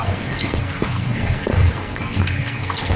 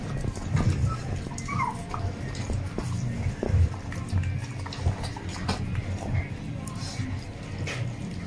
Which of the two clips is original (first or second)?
second